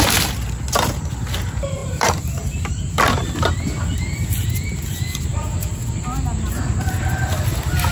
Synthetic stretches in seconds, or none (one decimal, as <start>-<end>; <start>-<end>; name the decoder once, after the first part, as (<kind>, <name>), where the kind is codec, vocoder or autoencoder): none